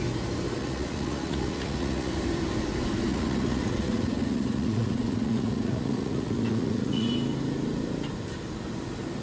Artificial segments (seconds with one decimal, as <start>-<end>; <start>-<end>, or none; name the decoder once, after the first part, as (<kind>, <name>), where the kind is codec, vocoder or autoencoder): 0.6-2.1 (vocoder, Vocos); 3.1-7.1